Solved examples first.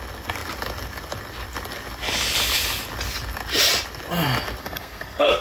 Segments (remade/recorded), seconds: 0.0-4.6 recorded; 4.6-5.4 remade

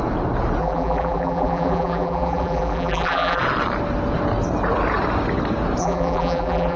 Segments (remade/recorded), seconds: 0.0-0.6 recorded; 0.6-3.4 remade; 3.4-5.8 recorded; 5.8-6.8 remade